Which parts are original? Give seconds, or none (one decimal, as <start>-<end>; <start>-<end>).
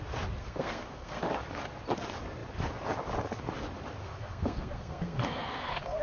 0.0-0.4; 1.2-4.0